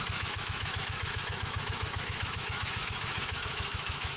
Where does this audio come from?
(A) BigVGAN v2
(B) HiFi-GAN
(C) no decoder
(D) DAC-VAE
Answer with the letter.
D